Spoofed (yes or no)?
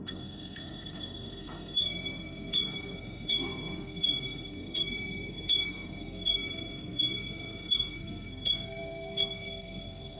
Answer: yes